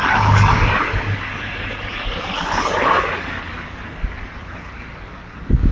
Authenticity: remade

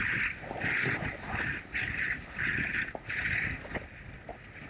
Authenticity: recorded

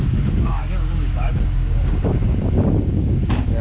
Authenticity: remade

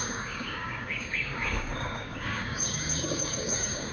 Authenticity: remade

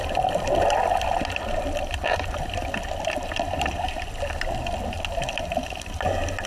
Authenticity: recorded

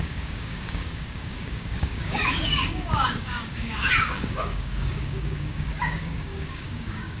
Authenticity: remade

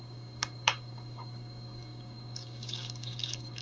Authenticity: remade